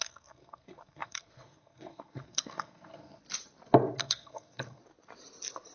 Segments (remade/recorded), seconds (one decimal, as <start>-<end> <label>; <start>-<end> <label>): 0.0-3.2 remade; 3.2-4.0 recorded; 4.0-4.8 remade; 4.8-5.7 recorded